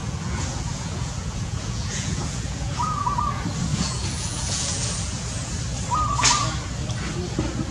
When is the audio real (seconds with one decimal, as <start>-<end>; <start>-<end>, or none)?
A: 3.2-3.7; 5.5-7.7